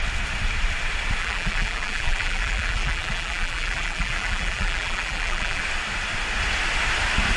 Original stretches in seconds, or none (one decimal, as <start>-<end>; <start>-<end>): 0.0-1.2; 5.6-7.4